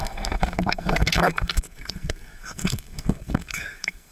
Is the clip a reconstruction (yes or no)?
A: yes